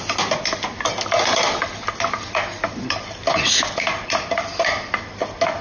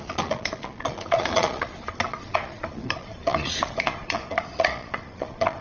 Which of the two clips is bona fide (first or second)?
first